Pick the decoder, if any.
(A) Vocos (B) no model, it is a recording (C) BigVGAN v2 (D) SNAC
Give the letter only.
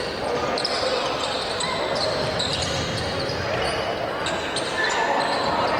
B